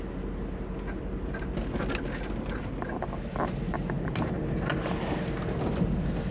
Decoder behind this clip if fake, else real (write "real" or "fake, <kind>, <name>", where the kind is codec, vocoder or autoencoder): real